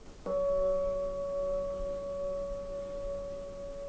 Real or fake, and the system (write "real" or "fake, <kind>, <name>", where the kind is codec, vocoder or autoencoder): real